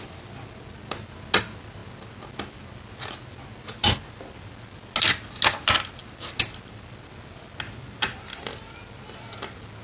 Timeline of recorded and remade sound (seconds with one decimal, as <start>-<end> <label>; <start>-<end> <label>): 0.0-9.8 recorded